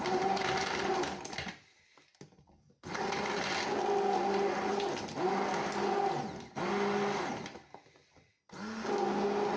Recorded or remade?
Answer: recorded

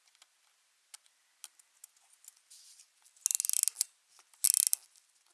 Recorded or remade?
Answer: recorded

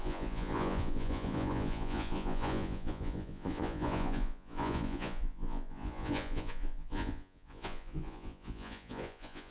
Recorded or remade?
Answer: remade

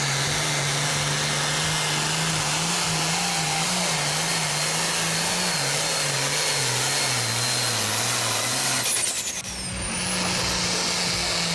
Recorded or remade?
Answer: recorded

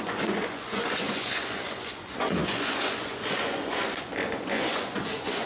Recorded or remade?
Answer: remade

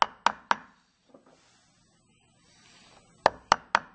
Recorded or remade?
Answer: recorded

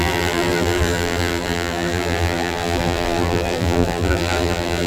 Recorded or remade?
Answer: remade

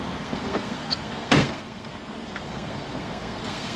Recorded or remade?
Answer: remade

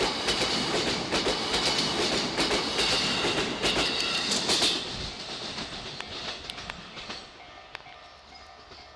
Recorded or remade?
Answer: recorded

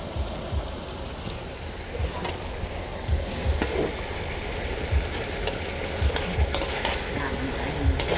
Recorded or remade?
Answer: recorded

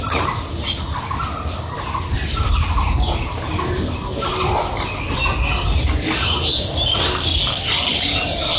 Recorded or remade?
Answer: recorded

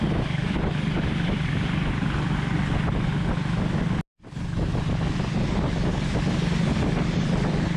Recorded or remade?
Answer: recorded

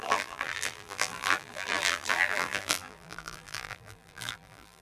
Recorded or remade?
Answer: remade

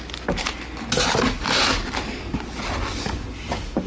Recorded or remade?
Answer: recorded